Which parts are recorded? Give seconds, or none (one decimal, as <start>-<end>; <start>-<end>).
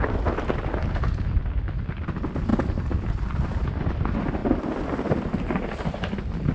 0.0-6.5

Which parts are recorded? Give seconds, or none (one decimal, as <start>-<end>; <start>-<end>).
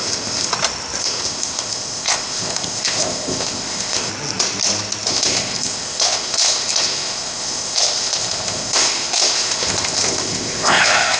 0.5-1.0; 4.1-5.1